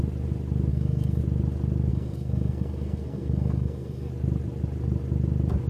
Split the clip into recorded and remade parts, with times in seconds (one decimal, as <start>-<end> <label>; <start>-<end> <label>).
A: 0.0-0.7 recorded; 0.7-1.2 remade; 1.2-1.9 recorded; 1.9-4.1 remade; 4.1-5.7 recorded